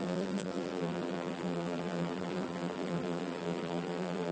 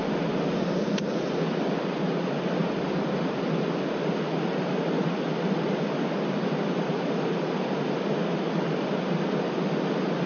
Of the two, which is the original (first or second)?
second